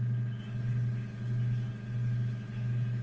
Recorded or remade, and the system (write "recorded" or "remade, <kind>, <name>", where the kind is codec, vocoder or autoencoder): recorded